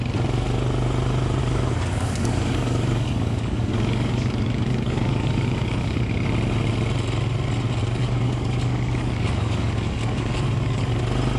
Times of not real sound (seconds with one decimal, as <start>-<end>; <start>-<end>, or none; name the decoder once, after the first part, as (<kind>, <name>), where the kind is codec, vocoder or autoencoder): 1.4-6.1 (codec, DAC); 7.8-11.0